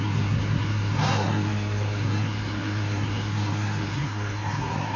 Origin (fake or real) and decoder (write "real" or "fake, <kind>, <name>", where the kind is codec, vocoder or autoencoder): fake, codec, SNAC